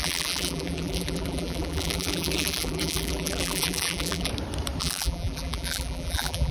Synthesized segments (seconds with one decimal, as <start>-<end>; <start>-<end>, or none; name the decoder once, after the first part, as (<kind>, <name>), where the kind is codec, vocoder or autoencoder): 0.0-4.3 (vocoder, BigVGAN v2); 4.8-6.5